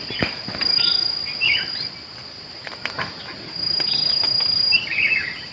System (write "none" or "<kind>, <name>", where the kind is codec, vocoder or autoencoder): none